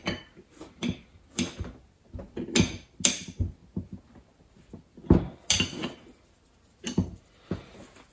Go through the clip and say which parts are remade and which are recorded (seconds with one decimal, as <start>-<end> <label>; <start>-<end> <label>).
0.0-8.1 recorded